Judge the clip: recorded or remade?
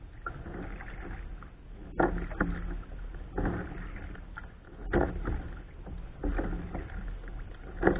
recorded